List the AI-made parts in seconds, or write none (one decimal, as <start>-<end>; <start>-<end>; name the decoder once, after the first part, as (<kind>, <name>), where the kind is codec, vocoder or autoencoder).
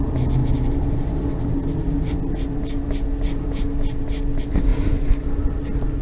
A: none